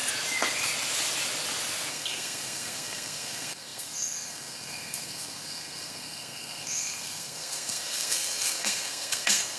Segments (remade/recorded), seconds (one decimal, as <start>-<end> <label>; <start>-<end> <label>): 0.0-1.9 recorded; 1.9-9.6 remade